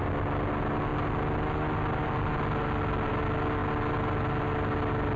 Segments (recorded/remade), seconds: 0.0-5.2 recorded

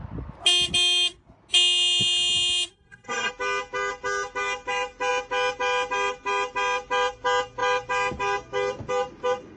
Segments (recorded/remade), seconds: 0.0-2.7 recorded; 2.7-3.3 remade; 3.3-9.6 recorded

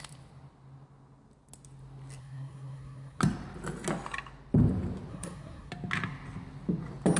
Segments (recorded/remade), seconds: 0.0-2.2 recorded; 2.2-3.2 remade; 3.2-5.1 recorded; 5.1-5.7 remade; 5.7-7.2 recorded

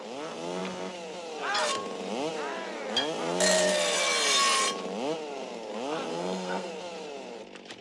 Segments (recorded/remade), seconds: 0.0-6.1 recorded; 6.1-6.7 remade; 6.7-7.8 recorded

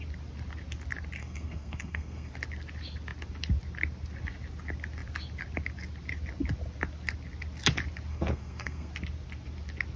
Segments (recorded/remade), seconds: 0.0-1.2 recorded; 1.2-2.3 remade; 2.3-8.1 recorded; 8.1-8.9 remade; 8.9-10.0 recorded

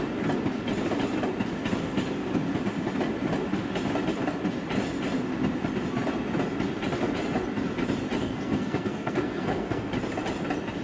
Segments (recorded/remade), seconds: 0.0-8.2 recorded; 8.2-9.9 remade; 9.9-10.8 recorded

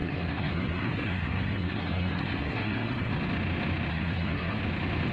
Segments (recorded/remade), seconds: 0.0-3.1 remade; 3.1-3.9 recorded; 3.9-4.6 remade; 4.6-5.1 recorded